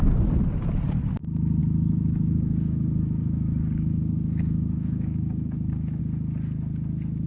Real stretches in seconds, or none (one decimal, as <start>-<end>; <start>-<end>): 0.0-1.6; 6.0-7.3